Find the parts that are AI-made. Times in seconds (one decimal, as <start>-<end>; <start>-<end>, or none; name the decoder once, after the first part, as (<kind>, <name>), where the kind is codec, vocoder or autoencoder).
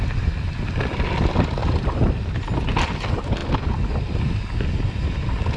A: none